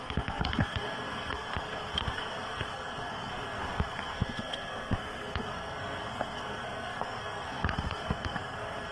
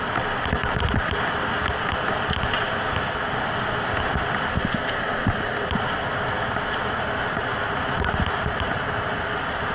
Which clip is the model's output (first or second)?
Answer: first